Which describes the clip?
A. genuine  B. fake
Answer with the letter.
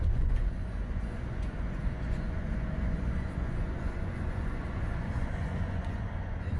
B